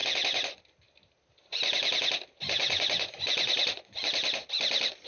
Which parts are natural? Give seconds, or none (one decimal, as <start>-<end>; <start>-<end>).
0.6-2.6; 4.1-5.1